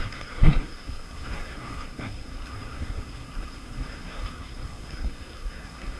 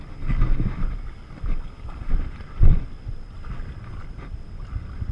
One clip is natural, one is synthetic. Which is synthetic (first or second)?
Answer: first